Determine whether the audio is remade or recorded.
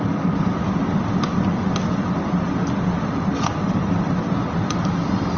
remade